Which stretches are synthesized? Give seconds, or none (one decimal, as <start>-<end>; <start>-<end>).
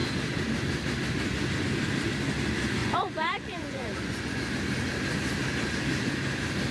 2.8-4.5